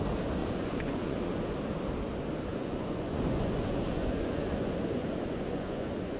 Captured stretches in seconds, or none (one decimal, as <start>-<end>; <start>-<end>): 0.0-0.4; 1.4-2.5